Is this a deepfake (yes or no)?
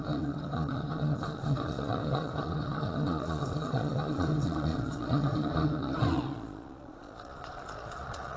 yes